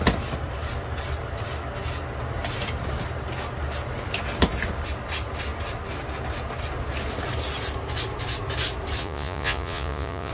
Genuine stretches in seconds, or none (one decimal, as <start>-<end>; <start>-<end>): 0.0-9.0